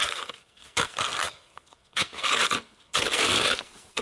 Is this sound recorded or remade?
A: remade